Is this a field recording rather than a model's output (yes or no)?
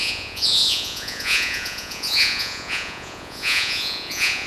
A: no